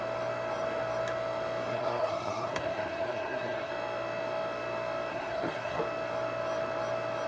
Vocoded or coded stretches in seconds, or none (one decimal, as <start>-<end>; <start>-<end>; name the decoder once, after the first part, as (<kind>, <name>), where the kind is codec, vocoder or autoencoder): 1.7-3.7 (codec, SNAC); 5.1-5.8